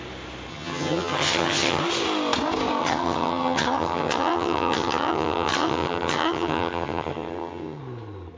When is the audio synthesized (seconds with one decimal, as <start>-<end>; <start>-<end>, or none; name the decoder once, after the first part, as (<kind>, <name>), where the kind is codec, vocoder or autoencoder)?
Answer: 0.5-1.8 (vocoder, HiFi-GAN); 2.8-7.8